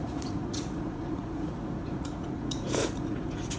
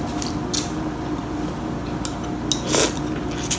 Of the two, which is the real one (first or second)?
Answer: second